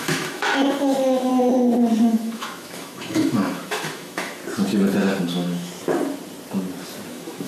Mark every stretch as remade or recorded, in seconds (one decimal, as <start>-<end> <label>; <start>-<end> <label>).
0.0-1.3 remade; 1.3-2.0 recorded; 2.0-4.4 remade; 4.4-5.2 recorded; 5.2-5.7 remade; 5.7-7.1 recorded; 7.1-7.5 remade